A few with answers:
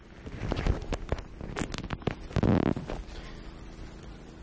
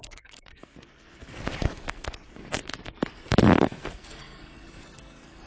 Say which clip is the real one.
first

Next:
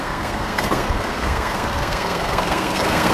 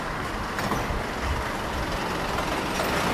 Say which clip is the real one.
second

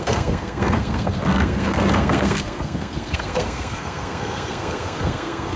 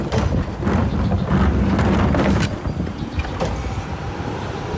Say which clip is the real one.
second